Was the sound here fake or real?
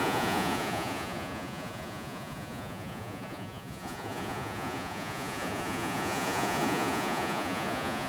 fake